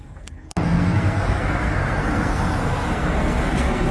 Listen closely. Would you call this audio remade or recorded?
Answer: remade